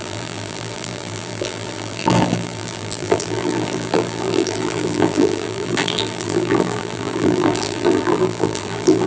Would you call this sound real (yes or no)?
no